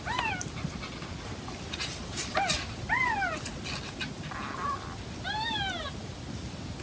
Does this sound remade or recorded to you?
recorded